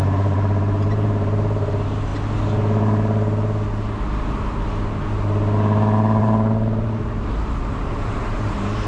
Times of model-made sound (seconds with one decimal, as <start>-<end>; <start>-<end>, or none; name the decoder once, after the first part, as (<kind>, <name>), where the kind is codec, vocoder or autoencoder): 0.0-2.1 (vocoder, BigVGAN v2); 6.2-8.9